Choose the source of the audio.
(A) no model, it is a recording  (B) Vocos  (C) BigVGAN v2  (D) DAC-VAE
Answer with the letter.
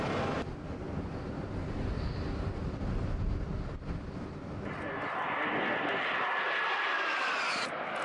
A